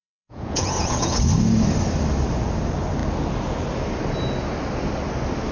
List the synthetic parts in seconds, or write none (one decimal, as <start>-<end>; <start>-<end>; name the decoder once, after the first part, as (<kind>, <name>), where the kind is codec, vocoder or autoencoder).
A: 0.0-1.2 (vocoder, Vocos)